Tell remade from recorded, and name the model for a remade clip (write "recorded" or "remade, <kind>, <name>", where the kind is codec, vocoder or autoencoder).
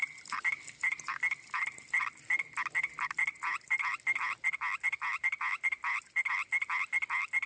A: recorded